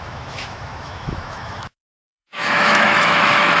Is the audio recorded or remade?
remade